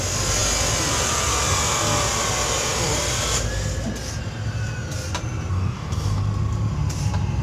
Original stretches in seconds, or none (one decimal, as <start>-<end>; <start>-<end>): 0.0-5.5; 6.2-7.4